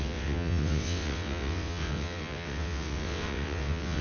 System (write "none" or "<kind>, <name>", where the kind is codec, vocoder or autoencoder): vocoder, WaveNeXt